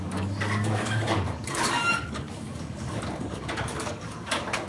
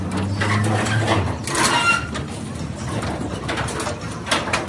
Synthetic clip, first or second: first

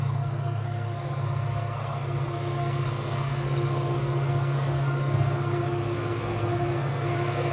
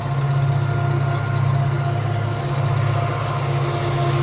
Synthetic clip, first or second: first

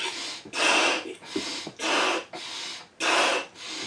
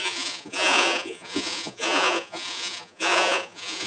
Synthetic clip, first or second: second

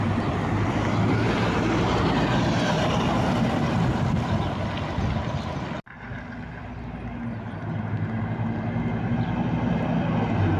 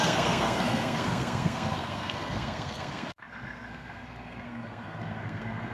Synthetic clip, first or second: second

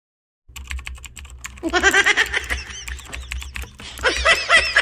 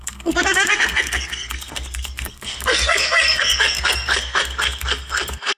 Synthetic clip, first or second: second